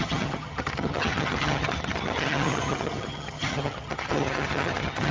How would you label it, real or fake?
fake